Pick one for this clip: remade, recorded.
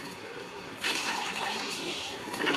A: remade